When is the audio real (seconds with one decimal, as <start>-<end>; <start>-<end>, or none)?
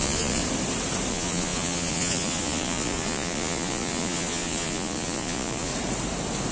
0.4-1.1; 5.7-6.5